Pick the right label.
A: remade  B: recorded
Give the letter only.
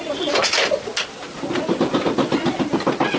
B